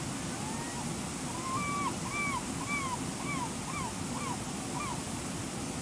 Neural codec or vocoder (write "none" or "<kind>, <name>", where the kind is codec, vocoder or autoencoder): none